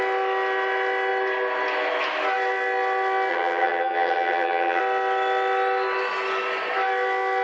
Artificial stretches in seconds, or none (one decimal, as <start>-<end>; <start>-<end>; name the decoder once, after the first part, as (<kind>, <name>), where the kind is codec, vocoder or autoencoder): 3.3-4.8 (vocoder, HiFi-GAN)